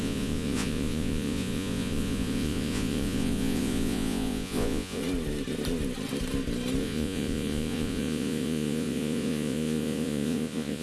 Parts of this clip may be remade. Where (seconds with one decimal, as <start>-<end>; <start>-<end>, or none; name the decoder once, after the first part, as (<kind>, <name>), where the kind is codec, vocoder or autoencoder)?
0.0-5.0 (vocoder, Vocos); 6.8-10.8